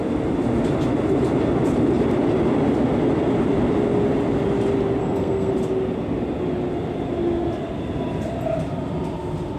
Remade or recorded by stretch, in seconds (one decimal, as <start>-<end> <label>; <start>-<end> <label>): 0.0-5.0 recorded; 5.0-5.5 remade; 5.5-9.6 recorded